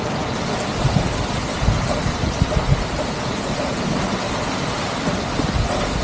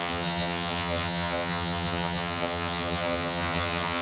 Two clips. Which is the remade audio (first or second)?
second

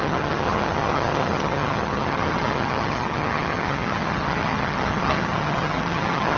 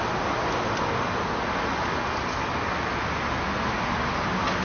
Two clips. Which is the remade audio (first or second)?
first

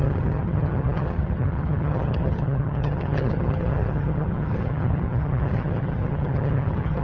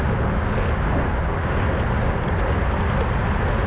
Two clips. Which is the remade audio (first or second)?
first